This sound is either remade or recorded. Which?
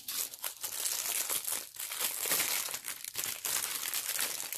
recorded